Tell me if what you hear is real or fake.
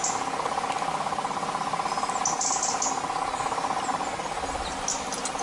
real